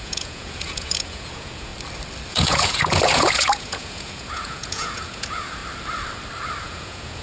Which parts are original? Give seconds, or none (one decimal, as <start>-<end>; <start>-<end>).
1.7-2.3; 5.6-6.6